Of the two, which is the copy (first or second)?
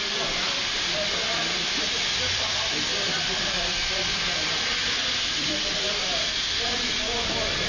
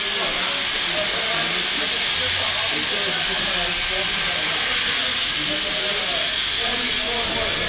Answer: first